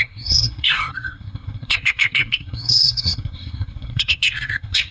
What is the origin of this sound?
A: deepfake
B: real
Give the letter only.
A